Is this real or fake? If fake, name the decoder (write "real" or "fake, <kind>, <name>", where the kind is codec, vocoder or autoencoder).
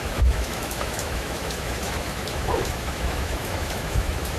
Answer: fake, autoencoder, DAC-VAE